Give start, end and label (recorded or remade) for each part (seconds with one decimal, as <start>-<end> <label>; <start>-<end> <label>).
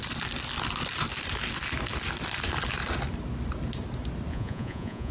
0.0-4.3 recorded; 4.3-5.1 remade